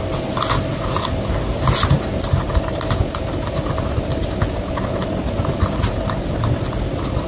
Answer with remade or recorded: recorded